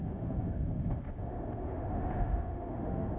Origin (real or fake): fake